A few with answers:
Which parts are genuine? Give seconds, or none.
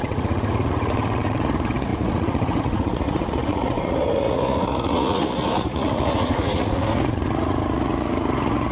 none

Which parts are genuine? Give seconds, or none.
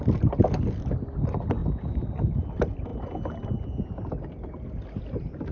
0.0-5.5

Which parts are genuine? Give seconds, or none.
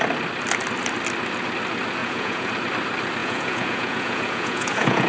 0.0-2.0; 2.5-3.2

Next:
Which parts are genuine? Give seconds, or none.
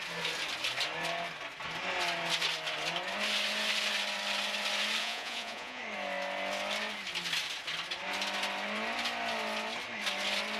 0.0-5.0; 5.8-10.6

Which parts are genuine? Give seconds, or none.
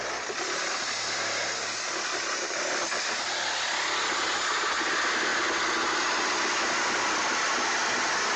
0.0-8.4